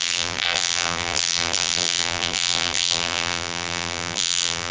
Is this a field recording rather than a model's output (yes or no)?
no